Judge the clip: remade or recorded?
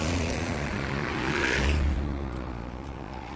remade